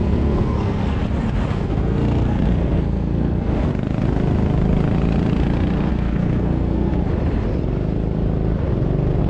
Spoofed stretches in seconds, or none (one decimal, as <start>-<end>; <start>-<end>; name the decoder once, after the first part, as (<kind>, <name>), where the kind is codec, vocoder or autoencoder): 0.0-1.0 (codec, SNAC); 1.5-3.7; 5.9-6.9